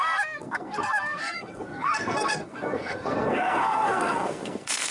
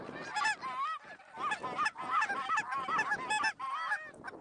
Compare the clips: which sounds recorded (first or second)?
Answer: second